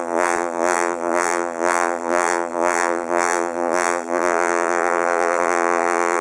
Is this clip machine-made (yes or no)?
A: yes